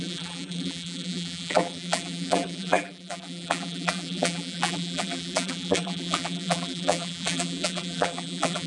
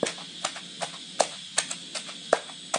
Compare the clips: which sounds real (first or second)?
second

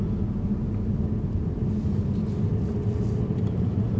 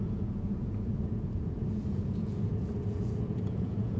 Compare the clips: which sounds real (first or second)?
first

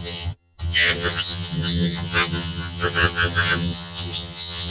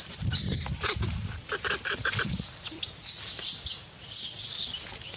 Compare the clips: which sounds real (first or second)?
second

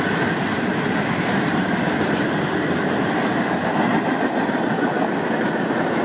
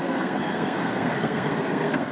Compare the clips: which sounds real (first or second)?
first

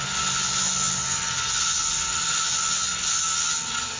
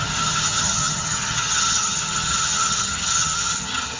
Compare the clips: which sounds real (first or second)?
first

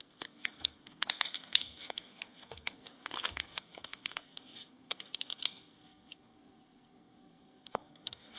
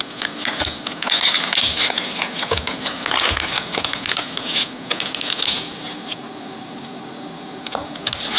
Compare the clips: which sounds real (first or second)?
second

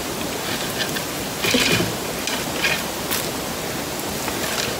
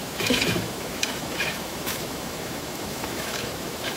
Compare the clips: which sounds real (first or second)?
first